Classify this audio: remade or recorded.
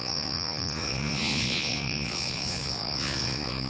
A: remade